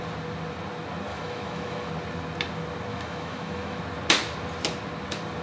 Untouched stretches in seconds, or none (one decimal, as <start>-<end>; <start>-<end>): 0.0-1.1; 1.9-2.9; 3.8-5.4